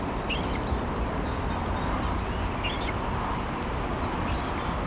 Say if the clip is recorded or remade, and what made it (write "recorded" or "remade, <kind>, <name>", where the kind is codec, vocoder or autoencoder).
recorded